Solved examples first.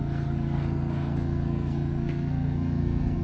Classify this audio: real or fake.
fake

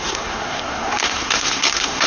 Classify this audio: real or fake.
fake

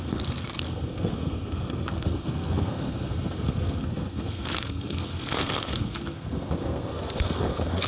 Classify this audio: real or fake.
fake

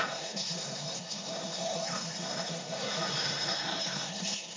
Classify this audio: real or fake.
fake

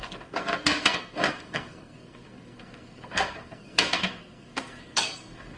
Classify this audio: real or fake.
fake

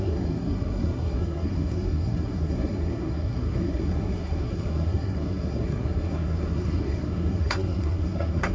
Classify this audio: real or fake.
fake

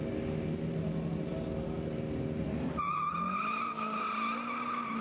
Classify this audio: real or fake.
real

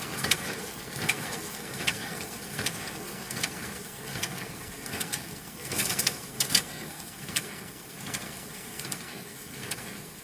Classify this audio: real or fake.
fake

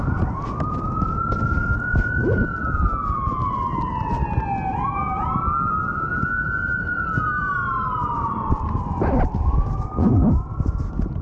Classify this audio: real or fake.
real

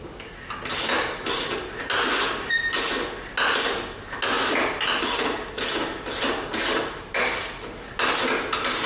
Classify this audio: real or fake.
real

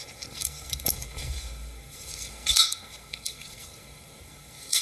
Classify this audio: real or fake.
fake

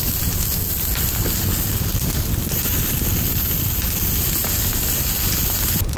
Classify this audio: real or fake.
real